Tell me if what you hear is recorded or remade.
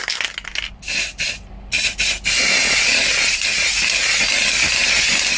recorded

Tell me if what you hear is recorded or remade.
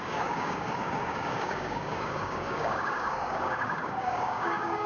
remade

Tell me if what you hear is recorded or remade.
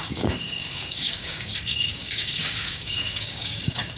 remade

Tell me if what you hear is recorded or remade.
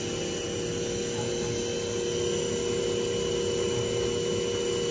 recorded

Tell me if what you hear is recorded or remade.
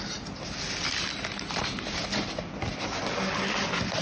recorded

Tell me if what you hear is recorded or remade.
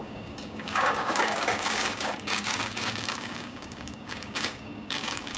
remade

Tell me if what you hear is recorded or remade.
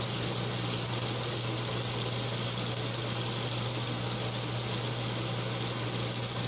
recorded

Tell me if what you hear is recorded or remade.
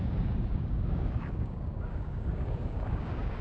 remade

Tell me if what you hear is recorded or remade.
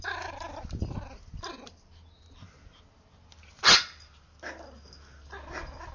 recorded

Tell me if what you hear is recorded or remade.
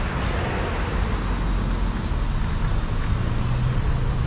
recorded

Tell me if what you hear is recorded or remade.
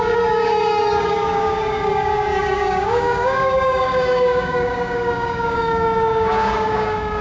remade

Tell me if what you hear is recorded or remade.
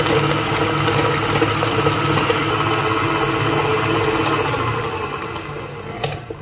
recorded